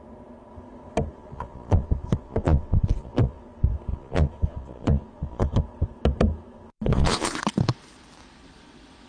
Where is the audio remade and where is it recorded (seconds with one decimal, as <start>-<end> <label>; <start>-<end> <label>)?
0.0-1.1 recorded; 1.1-3.4 remade; 3.4-3.9 recorded; 3.9-5.6 remade; 5.6-6.9 recorded; 6.9-7.4 remade; 7.4-9.1 recorded